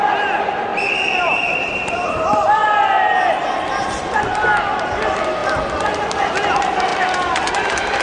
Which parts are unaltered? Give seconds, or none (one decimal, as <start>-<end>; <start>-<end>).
0.0-0.7; 3.0-8.0